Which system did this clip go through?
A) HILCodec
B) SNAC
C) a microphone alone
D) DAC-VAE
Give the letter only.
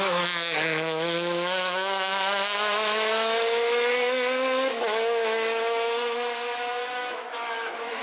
D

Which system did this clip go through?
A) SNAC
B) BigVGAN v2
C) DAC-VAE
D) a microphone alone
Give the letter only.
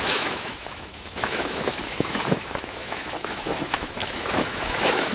C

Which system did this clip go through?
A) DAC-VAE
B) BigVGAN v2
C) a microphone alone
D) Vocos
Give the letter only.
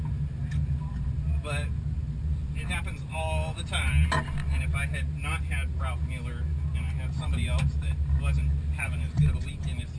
C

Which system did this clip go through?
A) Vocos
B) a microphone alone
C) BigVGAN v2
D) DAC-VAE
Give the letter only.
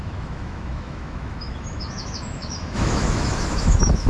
D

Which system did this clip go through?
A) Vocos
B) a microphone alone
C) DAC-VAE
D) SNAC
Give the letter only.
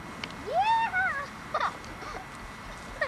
B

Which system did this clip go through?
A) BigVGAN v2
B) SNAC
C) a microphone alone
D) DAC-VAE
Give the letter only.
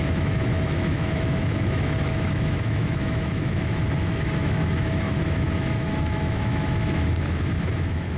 D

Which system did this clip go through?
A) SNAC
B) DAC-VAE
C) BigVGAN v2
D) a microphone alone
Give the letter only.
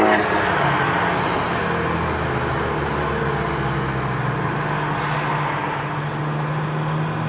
D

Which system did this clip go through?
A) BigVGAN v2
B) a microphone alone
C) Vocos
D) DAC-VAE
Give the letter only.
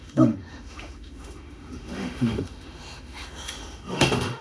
D